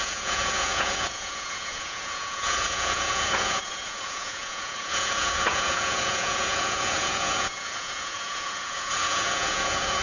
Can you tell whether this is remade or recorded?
remade